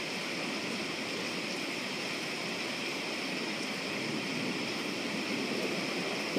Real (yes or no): no